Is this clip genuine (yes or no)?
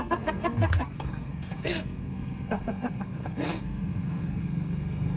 no